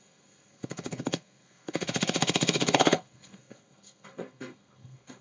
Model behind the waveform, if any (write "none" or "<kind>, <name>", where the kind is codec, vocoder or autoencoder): codec, SNAC